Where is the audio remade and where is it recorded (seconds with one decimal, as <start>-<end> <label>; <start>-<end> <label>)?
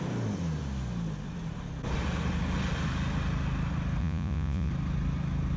0.0-4.0 recorded; 4.0-4.7 remade; 4.7-5.6 recorded